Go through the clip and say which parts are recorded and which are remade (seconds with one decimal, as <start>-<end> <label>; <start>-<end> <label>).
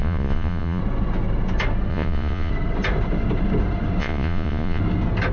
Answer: 0.0-0.8 remade; 0.8-1.9 recorded; 1.9-2.5 remade; 2.5-4.0 recorded; 4.0-4.8 remade; 4.8-5.3 recorded